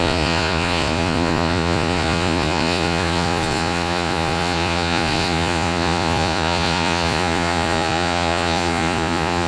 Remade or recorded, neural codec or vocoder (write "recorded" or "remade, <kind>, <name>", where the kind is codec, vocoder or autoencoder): remade, vocoder, Vocos